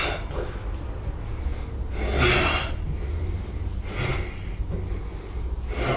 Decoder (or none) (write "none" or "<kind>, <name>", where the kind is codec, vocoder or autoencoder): none